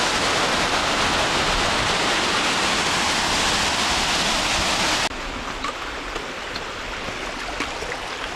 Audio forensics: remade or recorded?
recorded